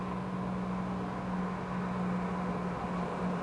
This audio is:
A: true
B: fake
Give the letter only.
A